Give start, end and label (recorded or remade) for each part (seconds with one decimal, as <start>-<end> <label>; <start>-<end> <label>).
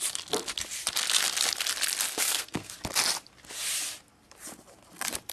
0.0-2.1 recorded; 2.1-2.7 remade; 2.7-5.3 recorded